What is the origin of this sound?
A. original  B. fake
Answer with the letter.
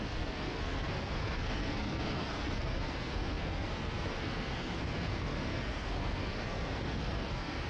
B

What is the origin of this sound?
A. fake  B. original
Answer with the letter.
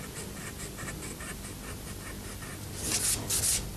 B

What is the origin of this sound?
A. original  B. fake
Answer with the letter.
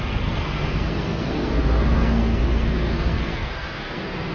B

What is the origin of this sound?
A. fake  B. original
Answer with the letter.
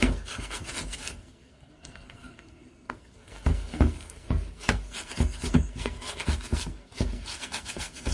A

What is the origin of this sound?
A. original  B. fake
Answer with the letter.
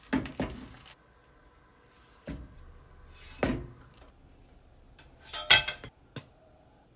A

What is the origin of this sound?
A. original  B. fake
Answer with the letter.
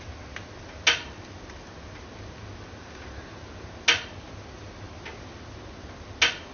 A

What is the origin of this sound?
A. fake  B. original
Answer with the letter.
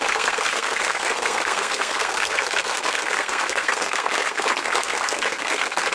A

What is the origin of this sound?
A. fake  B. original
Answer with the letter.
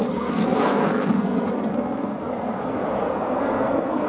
A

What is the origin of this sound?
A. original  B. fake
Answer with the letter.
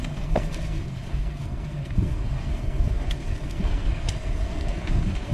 B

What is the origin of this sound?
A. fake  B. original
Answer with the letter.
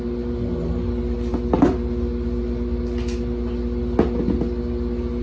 B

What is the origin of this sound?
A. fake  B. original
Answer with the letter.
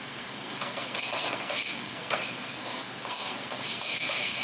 A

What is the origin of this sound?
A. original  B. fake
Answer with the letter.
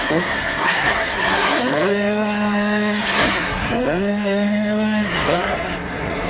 B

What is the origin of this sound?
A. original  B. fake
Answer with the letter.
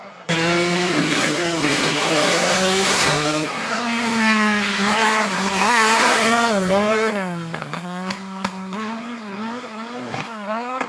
B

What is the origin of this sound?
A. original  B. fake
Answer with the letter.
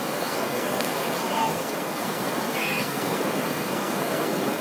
B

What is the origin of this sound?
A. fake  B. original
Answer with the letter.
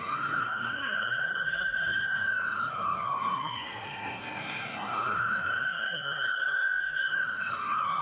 A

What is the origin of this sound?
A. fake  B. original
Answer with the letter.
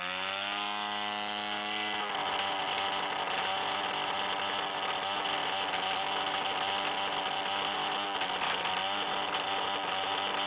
B